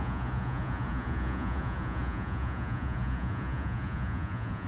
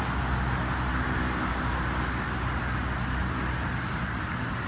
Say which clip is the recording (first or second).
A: second